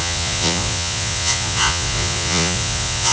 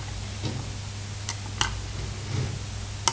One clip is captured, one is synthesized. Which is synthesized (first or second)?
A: first